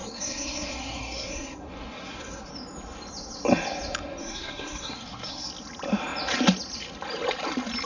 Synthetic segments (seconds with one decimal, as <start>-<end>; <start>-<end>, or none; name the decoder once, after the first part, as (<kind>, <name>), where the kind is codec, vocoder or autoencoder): 0.0-2.5 (codec, SNAC); 4.2-5.5